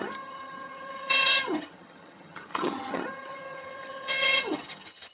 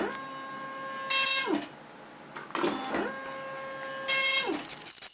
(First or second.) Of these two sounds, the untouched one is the second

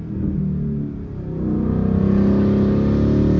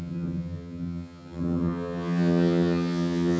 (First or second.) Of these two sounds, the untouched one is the first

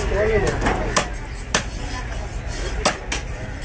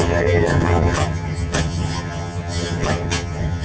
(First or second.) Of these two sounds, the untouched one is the first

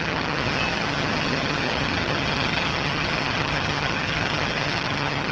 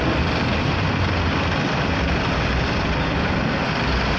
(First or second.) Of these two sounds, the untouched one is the second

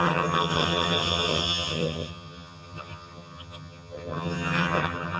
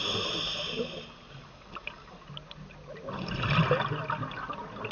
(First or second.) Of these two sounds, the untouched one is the second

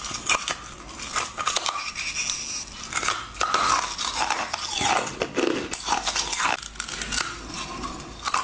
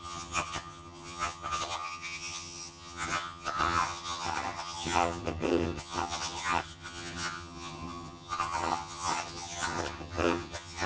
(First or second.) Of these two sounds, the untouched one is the first